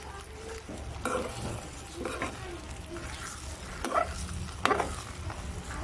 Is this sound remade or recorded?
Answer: recorded